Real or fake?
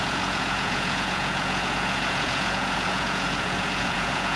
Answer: fake